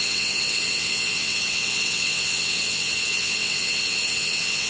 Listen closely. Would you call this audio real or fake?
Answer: fake